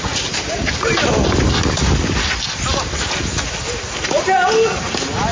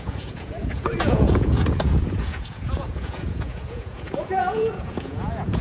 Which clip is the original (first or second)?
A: first